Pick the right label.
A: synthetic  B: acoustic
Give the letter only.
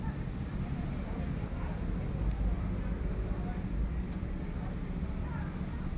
B